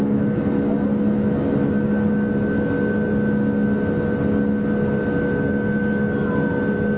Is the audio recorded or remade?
recorded